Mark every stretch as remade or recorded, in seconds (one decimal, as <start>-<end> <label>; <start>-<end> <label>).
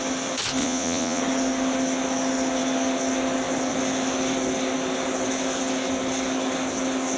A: 0.0-0.6 recorded; 0.6-1.2 remade; 1.2-7.2 recorded